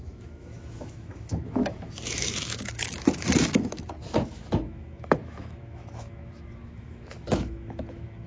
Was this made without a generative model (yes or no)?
no